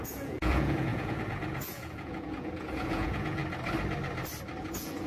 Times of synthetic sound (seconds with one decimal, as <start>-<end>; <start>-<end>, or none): 0.0-3.4; 4.6-5.1